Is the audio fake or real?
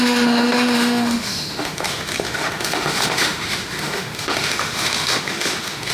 fake